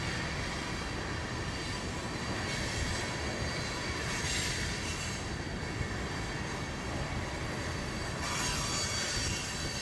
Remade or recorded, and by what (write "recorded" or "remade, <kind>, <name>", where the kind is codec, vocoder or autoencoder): recorded